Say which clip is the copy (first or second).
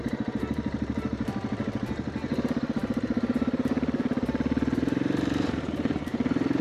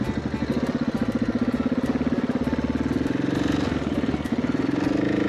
first